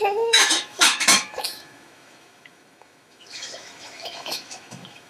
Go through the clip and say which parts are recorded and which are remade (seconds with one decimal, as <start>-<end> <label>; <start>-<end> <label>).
0.0-5.1 remade